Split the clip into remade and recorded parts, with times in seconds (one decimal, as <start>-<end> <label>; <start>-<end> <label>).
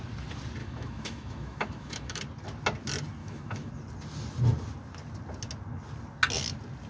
0.0-0.6 recorded; 0.6-2.2 remade; 2.2-3.2 recorded; 3.2-3.7 remade; 3.7-6.9 recorded